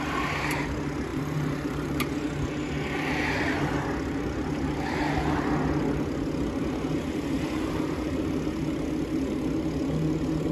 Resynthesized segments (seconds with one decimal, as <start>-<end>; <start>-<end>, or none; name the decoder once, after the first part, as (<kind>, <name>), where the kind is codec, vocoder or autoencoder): 1.1-2.0 (vocoder, BigVGAN v2)